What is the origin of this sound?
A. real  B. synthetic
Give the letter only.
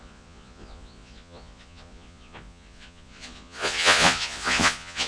B